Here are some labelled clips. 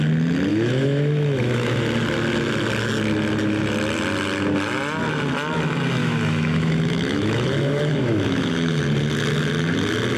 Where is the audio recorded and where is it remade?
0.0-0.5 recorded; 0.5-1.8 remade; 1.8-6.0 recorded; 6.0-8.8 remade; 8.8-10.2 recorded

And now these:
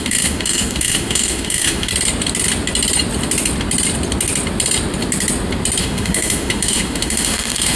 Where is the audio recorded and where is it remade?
0.0-1.9 remade; 1.9-5.8 recorded; 5.8-7.8 remade

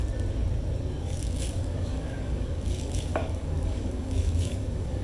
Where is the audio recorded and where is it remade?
0.0-1.0 recorded; 1.0-5.0 remade

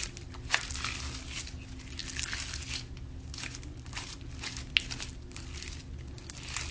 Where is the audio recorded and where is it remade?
0.0-6.7 recorded

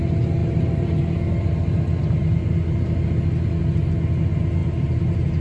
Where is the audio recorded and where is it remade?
0.0-0.4 recorded; 0.4-1.0 remade; 1.0-4.6 recorded; 4.6-5.4 remade

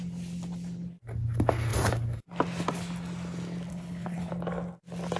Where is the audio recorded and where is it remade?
0.0-3.7 recorded; 3.7-4.3 remade; 4.3-5.2 recorded

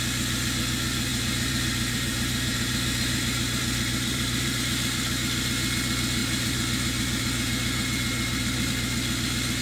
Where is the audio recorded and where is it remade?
0.0-1.1 recorded; 1.1-4.6 remade; 4.6-6.2 recorded; 6.2-8.7 remade; 8.7-9.6 recorded

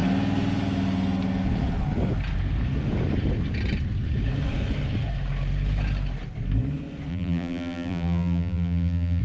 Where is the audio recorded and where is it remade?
0.0-7.1 recorded; 7.1-9.2 remade